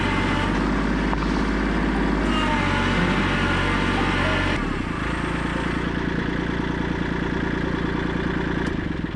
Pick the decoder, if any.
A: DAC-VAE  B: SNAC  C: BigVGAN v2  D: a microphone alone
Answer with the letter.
D